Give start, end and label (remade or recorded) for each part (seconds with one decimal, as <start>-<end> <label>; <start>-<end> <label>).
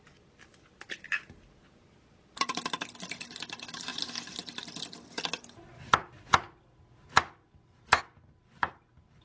0.0-9.2 recorded